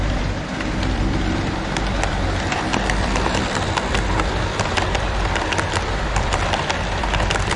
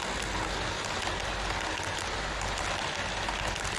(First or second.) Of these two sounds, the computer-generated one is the first